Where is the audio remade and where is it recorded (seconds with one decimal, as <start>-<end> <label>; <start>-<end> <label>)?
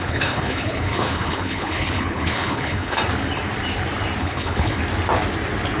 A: 0.0-3.0 remade; 3.0-4.2 recorded; 4.2-4.8 remade; 4.8-5.8 recorded